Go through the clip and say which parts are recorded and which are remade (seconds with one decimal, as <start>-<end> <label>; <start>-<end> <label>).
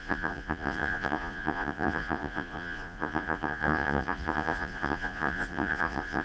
0.0-6.2 remade